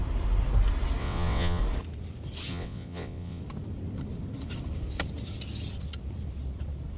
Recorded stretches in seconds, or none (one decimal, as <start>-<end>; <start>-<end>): 0.0-1.0; 1.6-2.5; 3.4-7.0